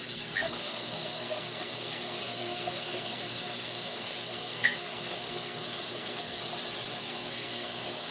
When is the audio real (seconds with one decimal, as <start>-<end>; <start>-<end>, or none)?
6.4-7.0